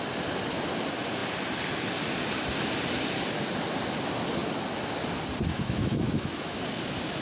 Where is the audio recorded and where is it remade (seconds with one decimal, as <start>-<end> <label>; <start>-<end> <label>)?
0.0-5.5 recorded; 5.5-6.6 remade; 6.6-7.2 recorded